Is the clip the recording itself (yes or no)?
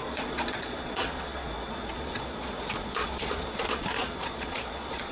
no